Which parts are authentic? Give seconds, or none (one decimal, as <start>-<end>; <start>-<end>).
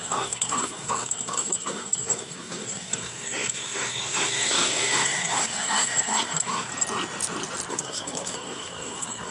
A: 6.7-7.7